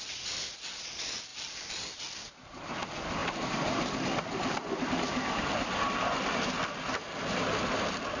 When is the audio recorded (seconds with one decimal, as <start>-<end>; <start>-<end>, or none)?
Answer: 0.0-1.3; 2.0-3.2; 4.1-8.2